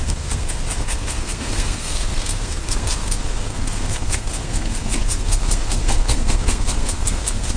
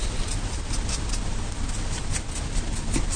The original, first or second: second